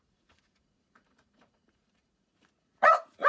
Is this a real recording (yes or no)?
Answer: no